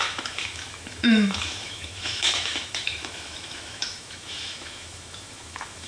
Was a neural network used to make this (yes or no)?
yes